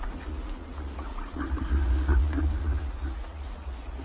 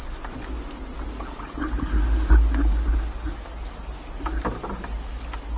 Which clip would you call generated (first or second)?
first